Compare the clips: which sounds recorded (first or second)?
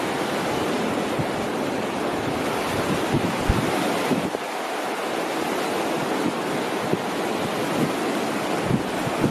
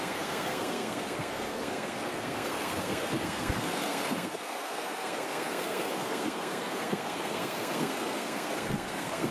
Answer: first